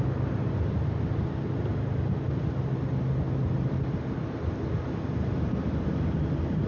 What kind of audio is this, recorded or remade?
recorded